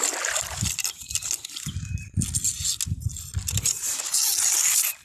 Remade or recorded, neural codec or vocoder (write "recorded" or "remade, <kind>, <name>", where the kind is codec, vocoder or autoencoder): recorded